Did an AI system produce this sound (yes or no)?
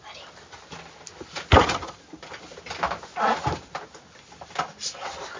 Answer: no